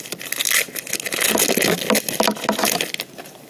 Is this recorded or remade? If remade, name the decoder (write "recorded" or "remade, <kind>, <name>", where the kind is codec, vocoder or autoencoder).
recorded